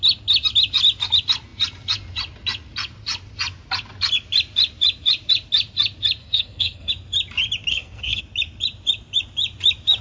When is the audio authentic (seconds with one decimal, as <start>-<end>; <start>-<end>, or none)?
0.0-6.2; 6.9-7.7; 8.2-10.0